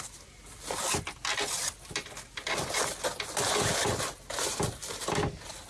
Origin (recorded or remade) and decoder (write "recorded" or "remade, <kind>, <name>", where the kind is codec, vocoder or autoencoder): recorded